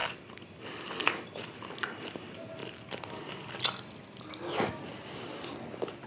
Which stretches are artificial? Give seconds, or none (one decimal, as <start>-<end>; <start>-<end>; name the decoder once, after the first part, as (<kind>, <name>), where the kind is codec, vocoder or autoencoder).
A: 0.9-2.6 (vocoder, BigVGAN v2)